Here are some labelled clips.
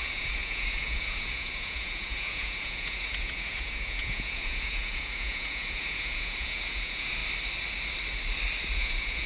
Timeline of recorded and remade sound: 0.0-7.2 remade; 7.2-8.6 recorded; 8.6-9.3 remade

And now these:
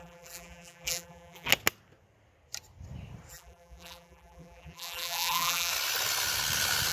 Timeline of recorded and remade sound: 0.0-1.5 remade; 1.5-3.3 recorded; 3.3-5.7 remade; 5.7-6.9 recorded

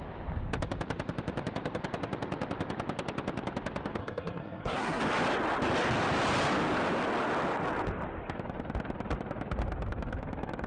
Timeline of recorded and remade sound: 0.0-4.0 recorded; 4.0-5.0 remade; 5.0-10.7 recorded

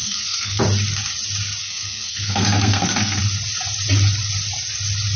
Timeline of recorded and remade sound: 0.0-0.6 remade; 0.6-1.6 recorded; 1.6-3.2 remade; 3.2-5.2 recorded

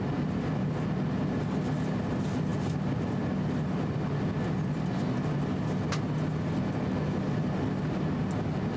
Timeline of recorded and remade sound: 0.0-8.8 recorded

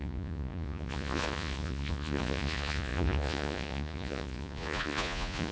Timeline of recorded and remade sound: 0.0-5.5 remade

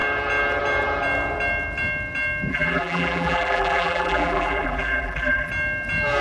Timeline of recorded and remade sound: 0.0-2.5 recorded; 2.5-5.5 remade; 5.5-6.2 recorded

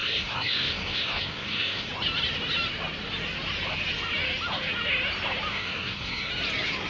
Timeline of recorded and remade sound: 0.0-1.9 remade; 1.9-5.5 recorded; 5.5-6.3 remade; 6.3-6.9 recorded